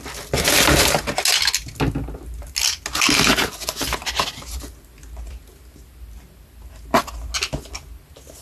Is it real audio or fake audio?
real